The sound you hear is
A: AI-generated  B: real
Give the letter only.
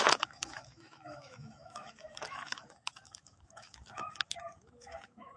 A